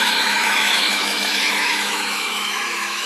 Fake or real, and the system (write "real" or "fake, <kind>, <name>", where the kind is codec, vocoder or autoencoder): fake, autoencoder, DAC-VAE